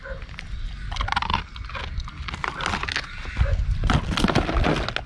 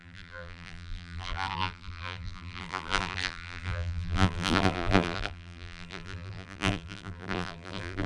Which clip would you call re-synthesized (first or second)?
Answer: second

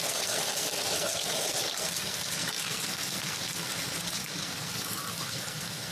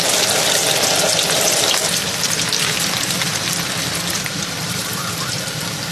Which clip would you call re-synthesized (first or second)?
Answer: first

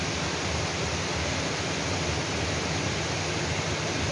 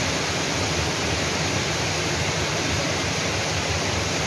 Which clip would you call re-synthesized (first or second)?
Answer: second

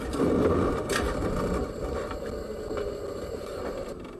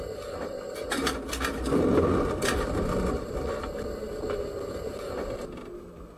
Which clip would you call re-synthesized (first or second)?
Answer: first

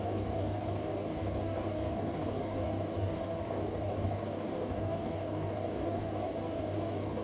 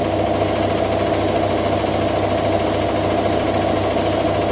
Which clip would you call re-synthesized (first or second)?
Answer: first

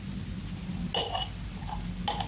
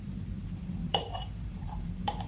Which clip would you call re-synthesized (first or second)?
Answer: second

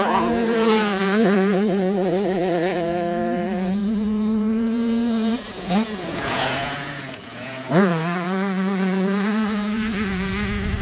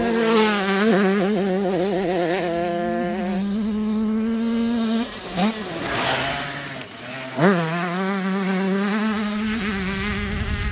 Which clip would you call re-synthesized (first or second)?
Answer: first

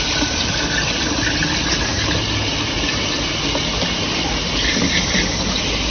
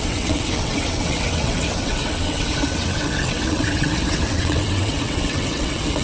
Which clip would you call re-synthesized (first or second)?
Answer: second